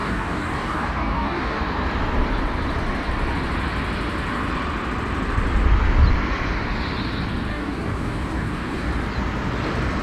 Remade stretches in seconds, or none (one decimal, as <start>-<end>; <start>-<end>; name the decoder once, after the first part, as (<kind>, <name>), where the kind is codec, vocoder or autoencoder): 0.0-1.6 (codec, DAC); 7.5-8.9